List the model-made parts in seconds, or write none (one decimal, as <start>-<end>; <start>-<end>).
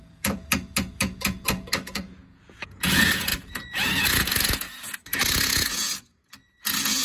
0.0-7.0